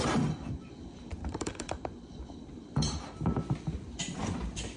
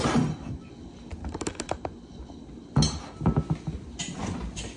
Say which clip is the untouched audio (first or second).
second